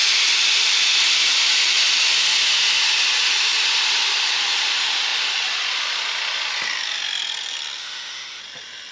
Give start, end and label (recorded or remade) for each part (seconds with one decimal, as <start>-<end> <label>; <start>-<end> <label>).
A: 0.0-7.8 recorded; 7.8-8.4 remade; 8.4-8.9 recorded